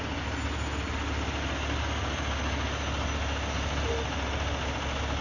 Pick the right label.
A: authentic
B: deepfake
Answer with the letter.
A